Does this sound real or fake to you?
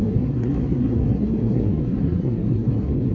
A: fake